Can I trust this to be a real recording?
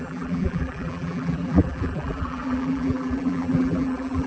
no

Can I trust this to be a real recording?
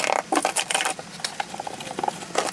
yes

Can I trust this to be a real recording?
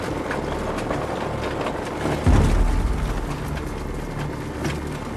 yes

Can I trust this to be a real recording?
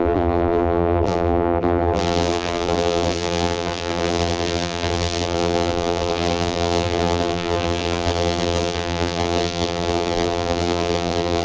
no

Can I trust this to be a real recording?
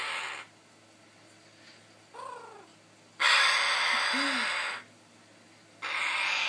yes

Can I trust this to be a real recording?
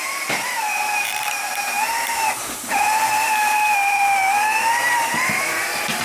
no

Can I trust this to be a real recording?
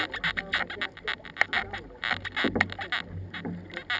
yes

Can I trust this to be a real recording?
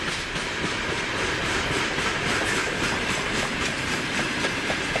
no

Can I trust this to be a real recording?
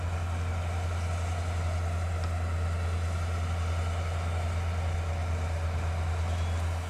yes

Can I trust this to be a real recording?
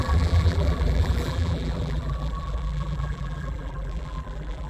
no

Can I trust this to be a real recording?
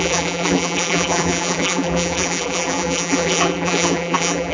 no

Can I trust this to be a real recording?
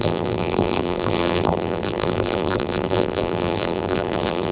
no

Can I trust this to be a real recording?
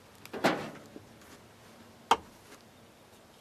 yes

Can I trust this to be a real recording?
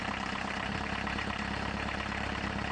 no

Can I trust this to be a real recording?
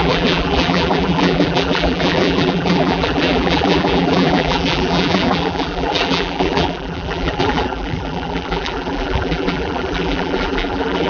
no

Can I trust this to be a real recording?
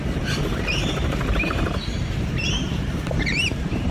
no